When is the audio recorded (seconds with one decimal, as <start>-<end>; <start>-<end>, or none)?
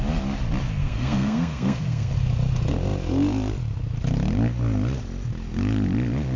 0.0-0.8; 2.1-6.4